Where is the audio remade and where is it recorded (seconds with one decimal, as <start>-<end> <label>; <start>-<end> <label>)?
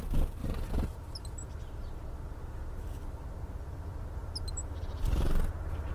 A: 0.0-5.9 recorded